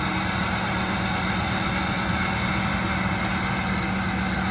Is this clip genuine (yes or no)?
yes